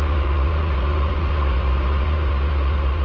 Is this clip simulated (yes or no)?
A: yes